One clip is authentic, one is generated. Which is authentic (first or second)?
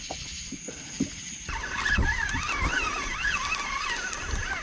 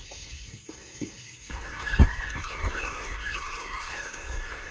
first